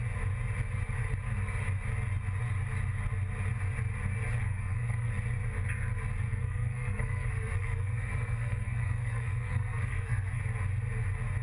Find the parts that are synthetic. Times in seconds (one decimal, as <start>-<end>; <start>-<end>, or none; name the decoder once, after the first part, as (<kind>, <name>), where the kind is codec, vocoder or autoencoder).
4.4-5.1 (codec, SNAC); 6.3-10.4